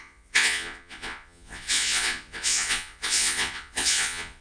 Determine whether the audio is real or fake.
fake